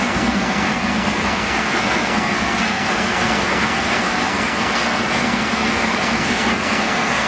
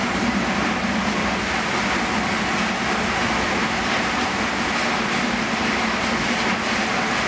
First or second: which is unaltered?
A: second